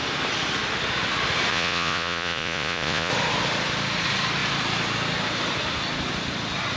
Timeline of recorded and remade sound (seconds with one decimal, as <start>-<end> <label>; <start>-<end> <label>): 0.0-1.5 recorded; 1.5-3.1 remade; 3.1-6.8 recorded